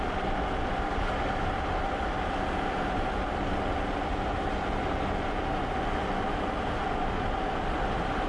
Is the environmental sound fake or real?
real